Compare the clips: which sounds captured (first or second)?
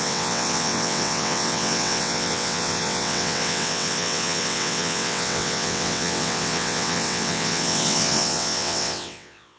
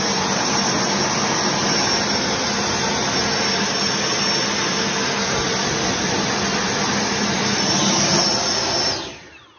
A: second